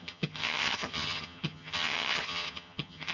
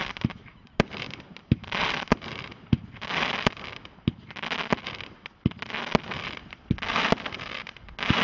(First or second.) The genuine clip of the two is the second